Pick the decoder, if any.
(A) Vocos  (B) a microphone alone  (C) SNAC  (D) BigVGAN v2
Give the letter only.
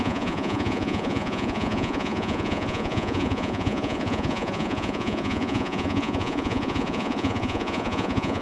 A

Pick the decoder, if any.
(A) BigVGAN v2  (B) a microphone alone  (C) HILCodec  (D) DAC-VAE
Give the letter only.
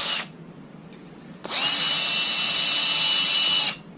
B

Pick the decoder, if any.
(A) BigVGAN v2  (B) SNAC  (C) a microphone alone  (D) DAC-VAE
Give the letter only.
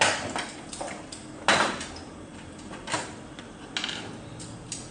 C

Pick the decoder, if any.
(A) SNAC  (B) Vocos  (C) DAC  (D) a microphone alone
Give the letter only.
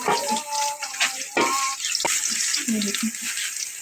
D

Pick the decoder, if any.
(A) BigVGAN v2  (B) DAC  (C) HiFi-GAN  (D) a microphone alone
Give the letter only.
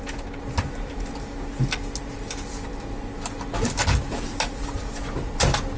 D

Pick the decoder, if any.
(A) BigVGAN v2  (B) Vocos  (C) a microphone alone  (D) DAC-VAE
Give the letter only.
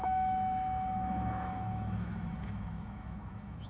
D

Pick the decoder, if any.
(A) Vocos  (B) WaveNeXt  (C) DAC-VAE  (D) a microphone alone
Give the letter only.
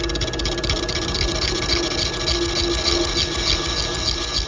D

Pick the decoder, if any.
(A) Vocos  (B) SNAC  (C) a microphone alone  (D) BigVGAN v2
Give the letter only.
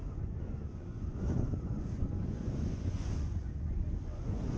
A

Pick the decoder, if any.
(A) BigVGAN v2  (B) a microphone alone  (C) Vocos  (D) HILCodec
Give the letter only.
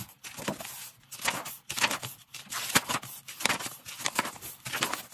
A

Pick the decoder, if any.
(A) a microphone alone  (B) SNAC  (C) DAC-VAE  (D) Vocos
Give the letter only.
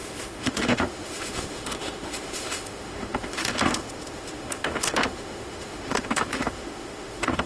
C